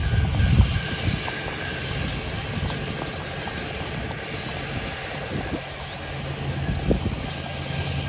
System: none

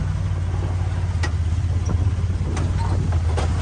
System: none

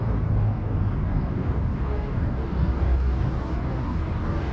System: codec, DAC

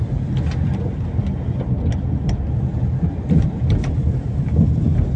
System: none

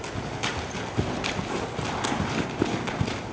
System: none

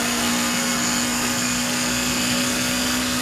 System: codec, SNAC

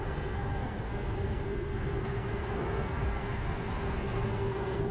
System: codec, SNAC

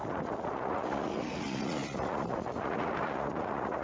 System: vocoder, Vocos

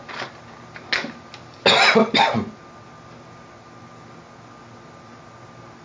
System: none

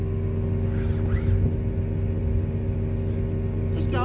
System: none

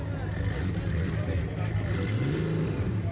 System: none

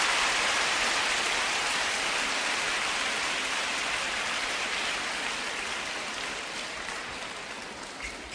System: vocoder, BigVGAN v2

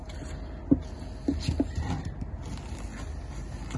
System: none